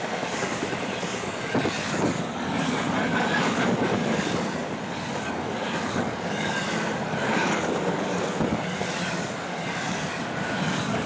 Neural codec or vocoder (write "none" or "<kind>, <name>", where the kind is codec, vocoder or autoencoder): codec, DAC